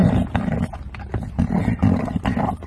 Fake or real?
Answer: real